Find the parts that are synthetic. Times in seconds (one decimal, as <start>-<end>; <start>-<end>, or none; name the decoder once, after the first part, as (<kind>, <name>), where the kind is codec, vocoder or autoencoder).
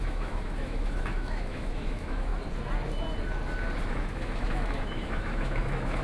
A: 0.0-2.3 (autoencoder, DAC-VAE); 3.9-6.0